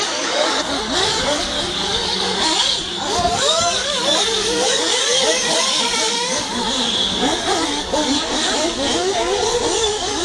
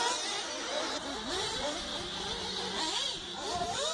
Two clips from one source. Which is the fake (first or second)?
first